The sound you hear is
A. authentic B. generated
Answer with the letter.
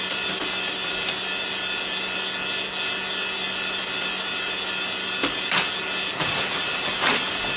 A